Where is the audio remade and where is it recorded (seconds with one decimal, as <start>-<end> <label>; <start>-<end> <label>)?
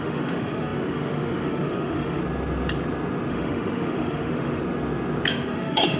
0.0-2.2 remade; 2.2-3.3 recorded; 3.3-4.6 remade; 4.6-5.3 recorded; 5.3-6.0 remade